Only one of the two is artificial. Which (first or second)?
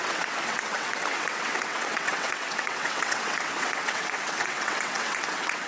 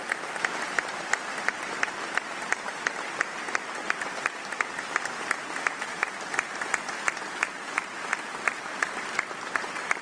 first